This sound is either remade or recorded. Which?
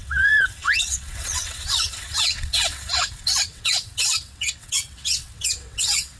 remade